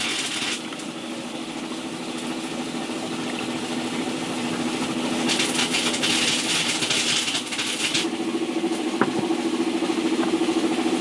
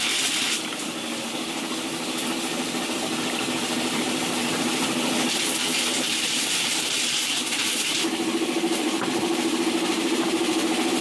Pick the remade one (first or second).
second